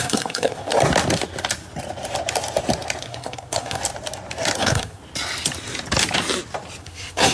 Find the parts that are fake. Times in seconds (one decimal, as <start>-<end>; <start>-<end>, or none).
0.0-0.7; 3.0-3.8; 4.6-5.0; 6.8-7.3

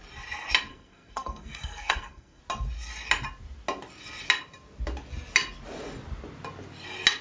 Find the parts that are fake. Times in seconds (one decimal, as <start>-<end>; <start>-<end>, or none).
0.7-2.4

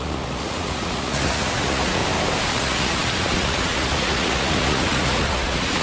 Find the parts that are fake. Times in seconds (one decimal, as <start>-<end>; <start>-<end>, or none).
0.0-2.0; 2.5-5.8

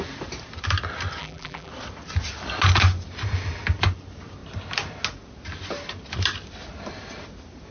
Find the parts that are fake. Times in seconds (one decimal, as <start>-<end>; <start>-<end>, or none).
1.2-1.7

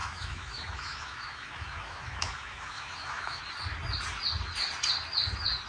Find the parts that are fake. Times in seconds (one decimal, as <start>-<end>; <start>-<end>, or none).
0.0-3.4

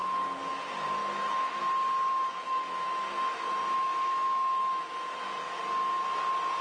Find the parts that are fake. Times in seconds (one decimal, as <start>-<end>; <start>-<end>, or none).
0.0-0.5; 1.0-1.6; 2.1-5.6